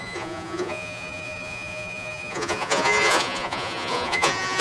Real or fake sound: fake